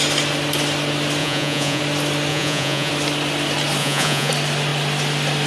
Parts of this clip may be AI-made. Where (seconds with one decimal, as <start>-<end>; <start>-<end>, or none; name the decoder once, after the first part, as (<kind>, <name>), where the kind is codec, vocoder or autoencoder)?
1.2-1.8 (vocoder, Vocos); 2.3-2.9; 3.8-4.3